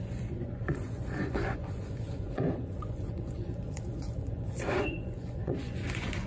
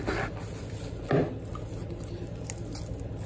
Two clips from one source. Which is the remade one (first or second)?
first